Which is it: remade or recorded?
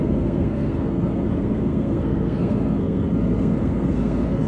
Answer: remade